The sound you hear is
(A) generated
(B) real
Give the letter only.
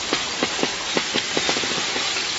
A